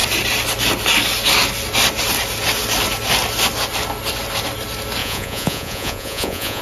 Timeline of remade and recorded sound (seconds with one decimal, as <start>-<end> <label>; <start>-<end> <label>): 0.0-5.0 recorded; 5.0-6.6 remade